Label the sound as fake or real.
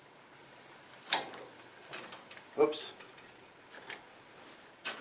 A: real